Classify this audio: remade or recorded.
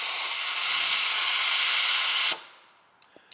recorded